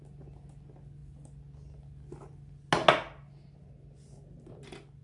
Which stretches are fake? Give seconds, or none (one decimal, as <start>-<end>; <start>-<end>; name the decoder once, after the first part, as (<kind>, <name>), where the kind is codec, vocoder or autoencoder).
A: none